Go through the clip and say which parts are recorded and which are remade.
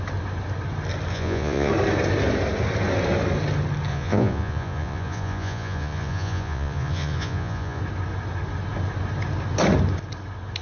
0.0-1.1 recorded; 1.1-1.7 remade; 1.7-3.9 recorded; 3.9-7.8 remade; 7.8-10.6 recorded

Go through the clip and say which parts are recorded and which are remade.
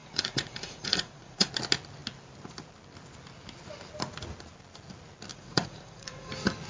0.0-1.5 remade; 1.5-5.3 recorded; 5.3-6.3 remade; 6.3-6.7 recorded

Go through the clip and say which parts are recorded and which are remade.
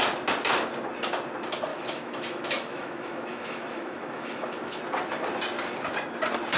0.0-1.7 recorded; 1.7-4.8 remade; 4.8-6.6 recorded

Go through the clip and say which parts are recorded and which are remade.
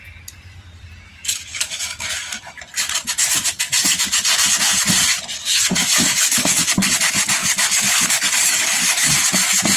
0.0-1.1 recorded; 1.1-2.6 remade; 2.6-5.8 recorded; 5.8-6.6 remade; 6.6-7.4 recorded; 7.4-9.1 remade; 9.1-9.8 recorded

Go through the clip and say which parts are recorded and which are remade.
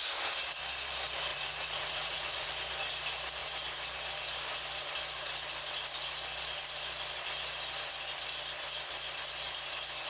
0.0-1.3 recorded; 1.3-2.5 remade; 2.5-10.1 recorded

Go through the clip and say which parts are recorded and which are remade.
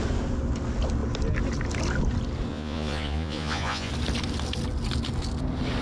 0.0-2.5 recorded; 2.5-3.9 remade; 3.9-5.8 recorded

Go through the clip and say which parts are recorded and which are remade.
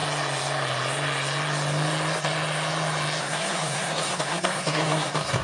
0.0-3.2 recorded; 3.2-5.4 remade